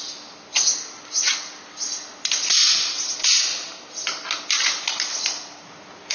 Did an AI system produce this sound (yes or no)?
no